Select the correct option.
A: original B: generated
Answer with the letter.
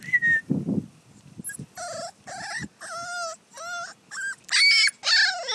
A